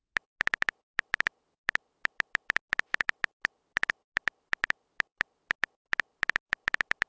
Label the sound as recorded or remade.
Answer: recorded